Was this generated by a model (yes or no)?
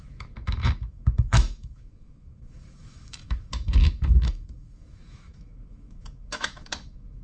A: yes